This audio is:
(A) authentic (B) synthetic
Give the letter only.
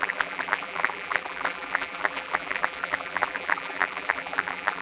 B